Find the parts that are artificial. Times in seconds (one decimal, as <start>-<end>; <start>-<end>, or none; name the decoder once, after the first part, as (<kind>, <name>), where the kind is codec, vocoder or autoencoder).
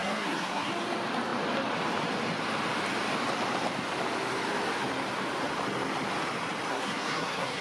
0.0-0.7 (codec, SNAC); 6.7-7.6